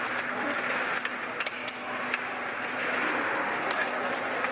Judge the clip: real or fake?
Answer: real